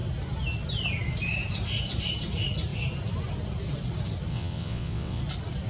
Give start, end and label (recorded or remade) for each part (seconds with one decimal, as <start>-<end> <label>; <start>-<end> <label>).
0.0-4.3 recorded; 4.3-5.2 remade; 5.2-5.7 recorded